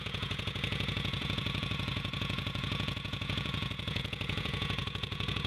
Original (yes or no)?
no